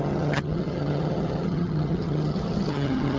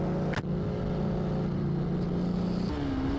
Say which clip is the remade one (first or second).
first